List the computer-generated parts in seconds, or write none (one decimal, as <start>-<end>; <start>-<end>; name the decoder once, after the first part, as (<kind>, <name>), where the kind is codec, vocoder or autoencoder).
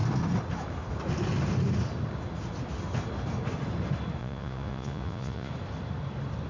4.2-5.5 (vocoder, Vocos)